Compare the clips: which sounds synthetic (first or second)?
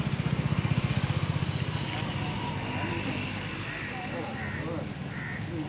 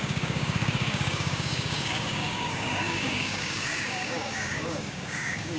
second